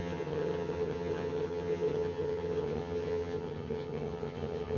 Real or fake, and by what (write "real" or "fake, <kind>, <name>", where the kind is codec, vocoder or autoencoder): fake, vocoder, HiFi-GAN